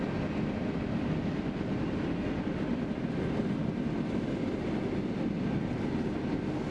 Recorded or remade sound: recorded